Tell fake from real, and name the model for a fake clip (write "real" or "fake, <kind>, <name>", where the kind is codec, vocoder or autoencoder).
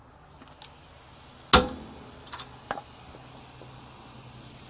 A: real